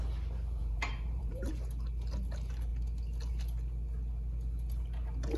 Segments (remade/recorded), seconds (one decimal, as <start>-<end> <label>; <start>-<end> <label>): 0.0-0.6 recorded; 0.6-1.5 remade; 1.5-5.4 recorded